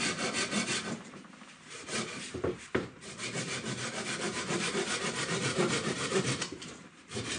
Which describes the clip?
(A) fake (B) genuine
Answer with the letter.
A